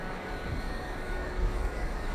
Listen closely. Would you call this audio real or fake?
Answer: fake